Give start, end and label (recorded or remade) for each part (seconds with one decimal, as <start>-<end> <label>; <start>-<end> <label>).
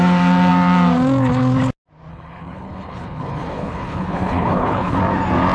0.0-2.1 recorded; 2.1-5.0 remade; 5.0-5.5 recorded